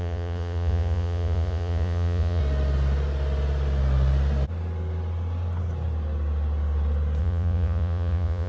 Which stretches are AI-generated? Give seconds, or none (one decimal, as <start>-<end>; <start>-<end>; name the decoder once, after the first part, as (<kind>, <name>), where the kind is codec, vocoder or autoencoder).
0.0-2.4 (vocoder, Vocos); 7.2-8.5